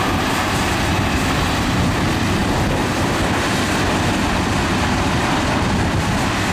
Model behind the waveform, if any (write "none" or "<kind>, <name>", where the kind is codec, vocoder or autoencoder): vocoder, BigVGAN v2